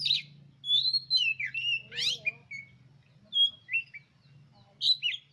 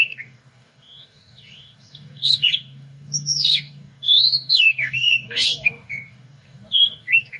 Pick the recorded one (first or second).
first